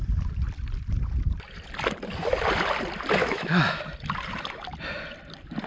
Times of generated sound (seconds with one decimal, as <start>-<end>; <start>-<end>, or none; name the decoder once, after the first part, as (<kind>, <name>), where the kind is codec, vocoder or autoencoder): 3.2-3.8 (autoencoder, DAC-VAE)